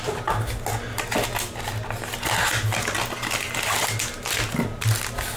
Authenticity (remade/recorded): recorded